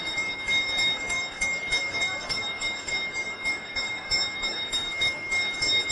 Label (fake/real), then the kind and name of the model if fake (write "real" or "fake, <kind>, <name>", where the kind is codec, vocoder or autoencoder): fake, codec, DAC